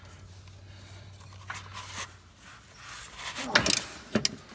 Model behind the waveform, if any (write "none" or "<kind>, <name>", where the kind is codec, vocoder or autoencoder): none